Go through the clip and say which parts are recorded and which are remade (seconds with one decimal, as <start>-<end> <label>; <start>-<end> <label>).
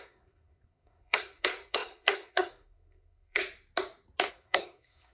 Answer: 0.0-3.4 remade; 3.4-4.3 recorded; 4.3-5.1 remade